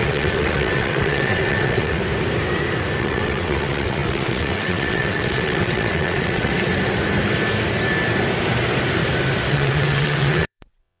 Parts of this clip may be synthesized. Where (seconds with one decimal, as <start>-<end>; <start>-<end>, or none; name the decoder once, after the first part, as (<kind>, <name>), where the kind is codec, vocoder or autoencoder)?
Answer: 0.0-2.0 (vocoder, WaveNeXt); 3.0-6.5; 9.5-11.0